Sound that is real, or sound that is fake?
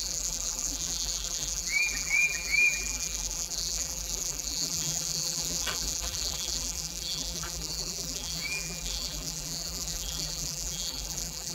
fake